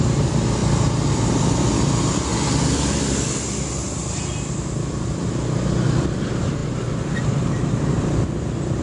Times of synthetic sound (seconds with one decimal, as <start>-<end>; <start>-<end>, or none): none